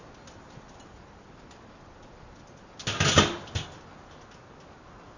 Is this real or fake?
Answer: real